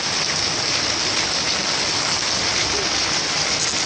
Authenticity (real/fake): real